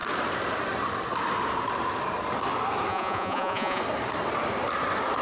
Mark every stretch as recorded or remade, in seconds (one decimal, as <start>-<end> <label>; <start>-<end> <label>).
0.0-2.9 recorded; 2.9-3.8 remade; 3.8-5.2 recorded